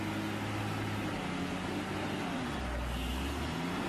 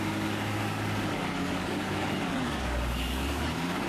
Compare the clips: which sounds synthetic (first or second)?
second